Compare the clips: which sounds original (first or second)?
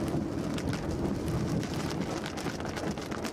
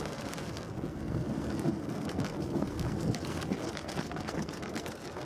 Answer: first